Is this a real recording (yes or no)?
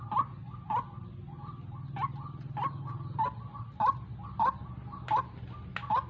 yes